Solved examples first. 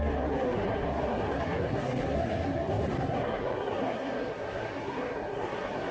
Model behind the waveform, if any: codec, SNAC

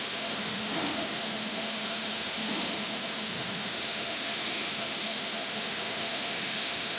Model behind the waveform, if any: autoencoder, DAC-VAE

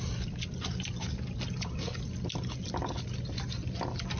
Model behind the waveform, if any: none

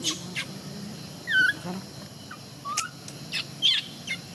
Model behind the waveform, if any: none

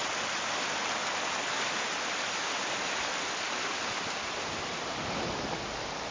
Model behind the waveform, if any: none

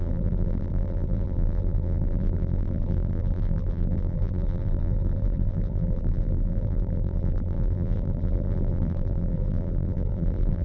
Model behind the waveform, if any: vocoder, BigVGAN v2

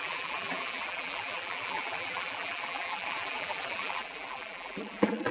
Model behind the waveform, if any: vocoder, BigVGAN v2